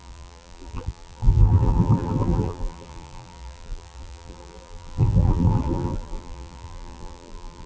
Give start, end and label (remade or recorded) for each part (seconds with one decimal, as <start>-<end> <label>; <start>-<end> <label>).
0.0-7.7 remade